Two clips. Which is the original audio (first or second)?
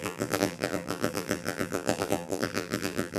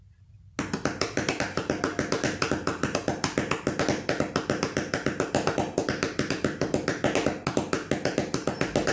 second